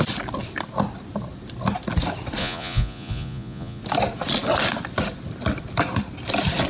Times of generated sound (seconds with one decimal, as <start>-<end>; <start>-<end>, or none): 2.4-3.8

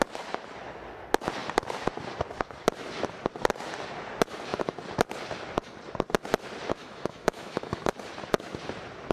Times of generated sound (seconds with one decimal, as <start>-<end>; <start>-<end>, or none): 6.8-7.8